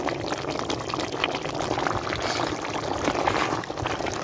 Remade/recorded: recorded